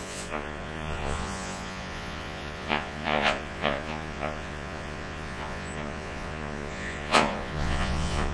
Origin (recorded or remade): remade